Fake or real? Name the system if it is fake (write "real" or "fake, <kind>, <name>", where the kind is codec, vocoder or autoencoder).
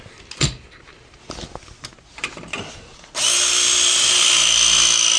real